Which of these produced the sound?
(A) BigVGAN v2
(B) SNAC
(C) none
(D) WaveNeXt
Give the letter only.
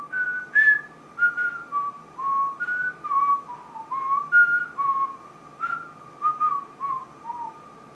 C